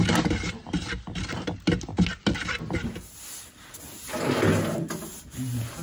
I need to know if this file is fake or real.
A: real